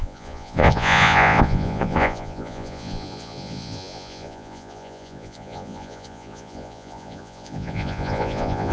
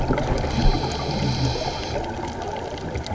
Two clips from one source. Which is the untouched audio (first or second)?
second